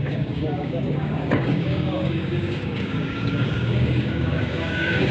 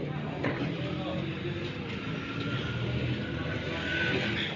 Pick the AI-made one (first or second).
first